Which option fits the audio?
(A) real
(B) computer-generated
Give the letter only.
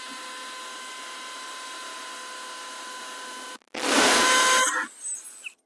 A